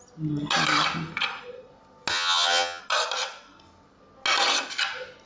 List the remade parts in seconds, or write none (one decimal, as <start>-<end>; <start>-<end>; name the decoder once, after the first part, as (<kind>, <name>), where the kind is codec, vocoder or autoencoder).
2.1-2.8 (vocoder, HiFi-GAN)

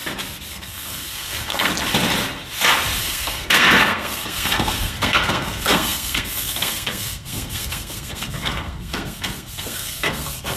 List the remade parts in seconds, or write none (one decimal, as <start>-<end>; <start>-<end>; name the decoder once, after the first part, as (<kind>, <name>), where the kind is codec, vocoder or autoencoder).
0.5-1.7 (codec, SNAC); 3.0-10.6

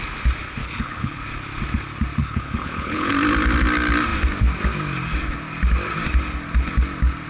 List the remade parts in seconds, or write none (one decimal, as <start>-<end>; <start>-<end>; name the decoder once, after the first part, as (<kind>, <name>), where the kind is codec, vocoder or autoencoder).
0.6-1.2 (codec, HILCodec); 2.2-3.1